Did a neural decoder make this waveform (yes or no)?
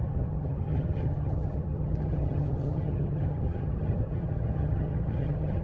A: yes